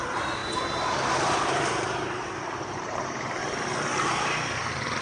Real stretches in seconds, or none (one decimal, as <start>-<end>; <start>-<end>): 0.0-0.4; 3.4-5.0